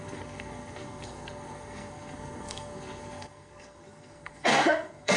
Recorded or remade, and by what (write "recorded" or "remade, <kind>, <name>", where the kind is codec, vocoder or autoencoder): remade, codec, SNAC